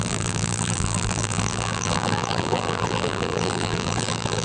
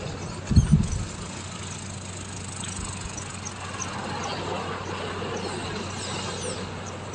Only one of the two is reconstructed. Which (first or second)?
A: first